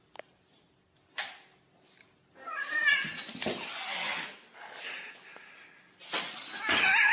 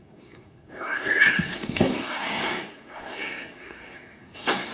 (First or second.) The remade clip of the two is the second